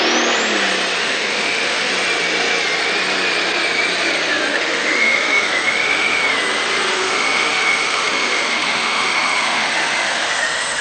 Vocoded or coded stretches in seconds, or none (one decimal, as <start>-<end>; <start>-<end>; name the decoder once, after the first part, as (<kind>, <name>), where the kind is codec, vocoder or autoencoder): 1.0-1.9 (autoencoder, DAC-VAE); 4.5-6.2; 6.9-10.8